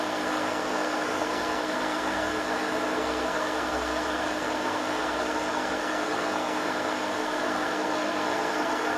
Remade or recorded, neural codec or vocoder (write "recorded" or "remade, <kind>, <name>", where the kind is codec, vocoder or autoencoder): remade, codec, SNAC